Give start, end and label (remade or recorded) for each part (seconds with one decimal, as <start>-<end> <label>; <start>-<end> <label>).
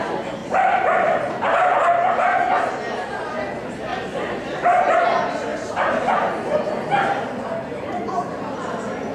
0.0-0.4 recorded; 0.4-1.3 remade; 1.3-3.9 recorded; 3.9-4.8 remade; 4.8-5.5 recorded; 5.5-7.4 remade; 7.4-9.1 recorded